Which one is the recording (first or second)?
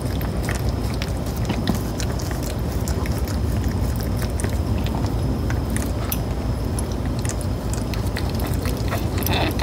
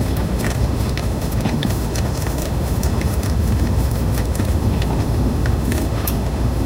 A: first